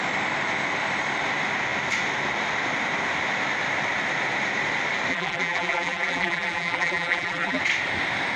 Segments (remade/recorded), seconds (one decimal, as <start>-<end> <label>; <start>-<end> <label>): 0.0-5.1 recorded; 5.1-7.6 remade; 7.6-8.4 recorded